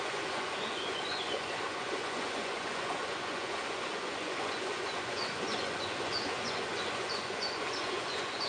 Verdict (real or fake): fake